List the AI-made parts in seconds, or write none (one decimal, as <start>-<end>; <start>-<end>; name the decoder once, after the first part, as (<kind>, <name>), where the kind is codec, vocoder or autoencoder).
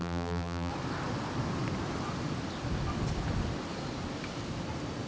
0.0-0.7 (vocoder, BigVGAN v2)